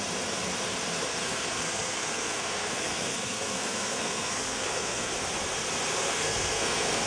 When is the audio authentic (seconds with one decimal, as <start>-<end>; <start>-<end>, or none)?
0.0-1.1; 5.1-5.9